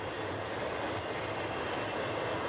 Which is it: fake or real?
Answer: real